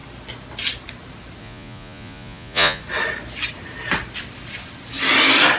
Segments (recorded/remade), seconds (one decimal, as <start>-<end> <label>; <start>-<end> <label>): 0.0-1.4 recorded; 1.4-2.8 remade; 2.8-5.6 recorded